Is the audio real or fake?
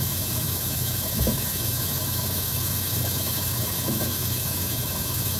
fake